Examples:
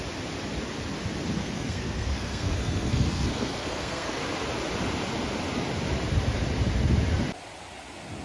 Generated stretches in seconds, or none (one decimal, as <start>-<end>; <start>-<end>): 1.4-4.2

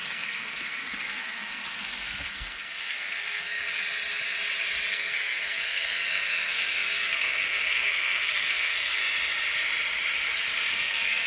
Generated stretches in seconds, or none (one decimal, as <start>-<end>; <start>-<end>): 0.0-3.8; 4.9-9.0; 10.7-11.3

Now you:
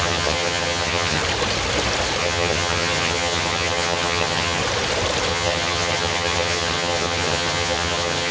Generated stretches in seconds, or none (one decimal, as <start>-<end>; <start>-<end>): 0.0-1.2; 2.2-4.6; 5.3-8.3

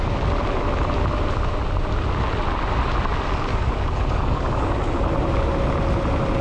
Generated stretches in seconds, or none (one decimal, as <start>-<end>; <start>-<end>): 3.5-4.9

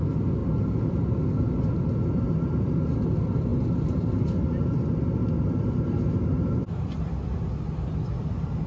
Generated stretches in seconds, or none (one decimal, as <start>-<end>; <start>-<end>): none

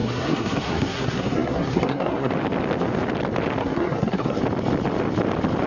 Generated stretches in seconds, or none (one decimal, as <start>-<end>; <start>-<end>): 0.0-2.3; 3.6-4.4